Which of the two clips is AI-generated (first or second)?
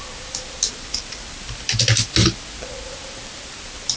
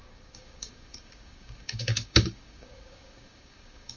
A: second